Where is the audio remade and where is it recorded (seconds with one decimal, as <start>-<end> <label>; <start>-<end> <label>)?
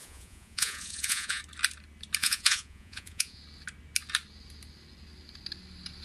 0.0-1.4 remade; 1.4-2.2 recorded; 2.2-3.4 remade; 3.4-6.0 recorded